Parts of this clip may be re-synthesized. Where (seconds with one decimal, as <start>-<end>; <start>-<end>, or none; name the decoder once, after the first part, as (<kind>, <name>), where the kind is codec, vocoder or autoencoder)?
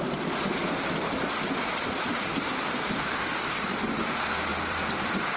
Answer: 0.6-1.8 (vocoder, BigVGAN v2); 4.5-5.4